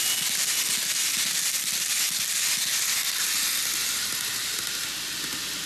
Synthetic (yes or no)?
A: no